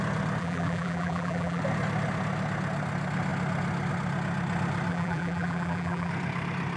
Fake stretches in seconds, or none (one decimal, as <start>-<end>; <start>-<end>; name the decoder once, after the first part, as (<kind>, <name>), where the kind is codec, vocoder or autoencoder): 0.4-1.6 (vocoder, BigVGAN v2); 4.9-6.1